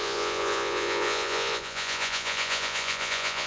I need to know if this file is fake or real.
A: fake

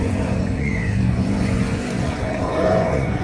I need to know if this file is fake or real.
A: fake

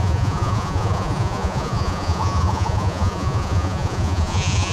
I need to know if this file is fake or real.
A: fake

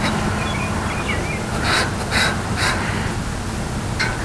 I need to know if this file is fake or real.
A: real